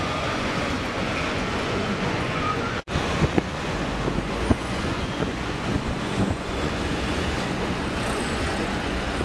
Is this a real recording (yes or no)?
no